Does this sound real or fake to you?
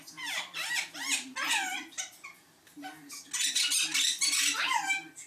real